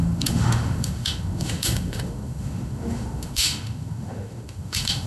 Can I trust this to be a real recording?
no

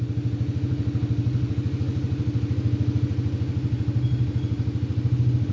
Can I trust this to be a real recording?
yes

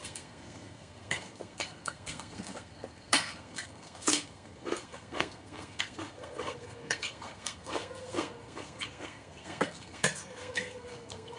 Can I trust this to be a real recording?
no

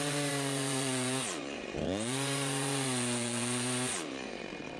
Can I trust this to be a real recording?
no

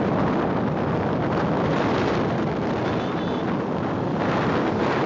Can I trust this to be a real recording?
yes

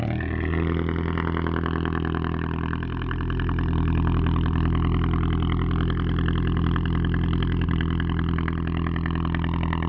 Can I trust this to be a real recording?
yes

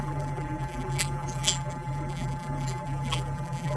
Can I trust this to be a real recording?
no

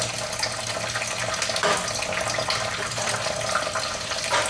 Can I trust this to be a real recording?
yes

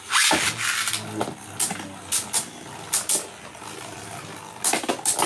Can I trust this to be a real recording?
yes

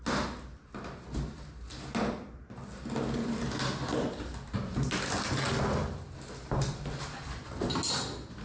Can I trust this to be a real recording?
yes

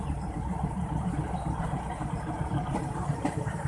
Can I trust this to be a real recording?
no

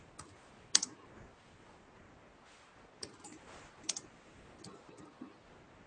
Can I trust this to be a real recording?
yes